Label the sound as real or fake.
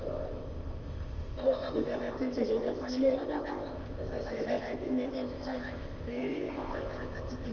fake